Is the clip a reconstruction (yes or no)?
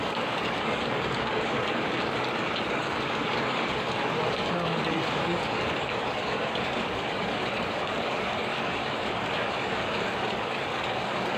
yes